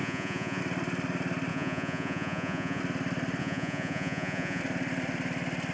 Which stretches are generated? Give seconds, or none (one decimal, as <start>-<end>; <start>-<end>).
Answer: 0.0-0.6; 1.5-2.8; 3.4-4.6